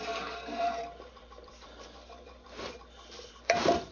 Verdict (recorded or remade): remade